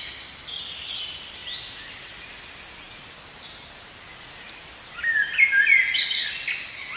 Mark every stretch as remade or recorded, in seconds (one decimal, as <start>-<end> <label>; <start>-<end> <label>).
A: 0.0-7.0 recorded